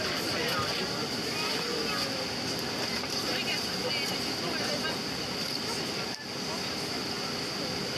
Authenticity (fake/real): real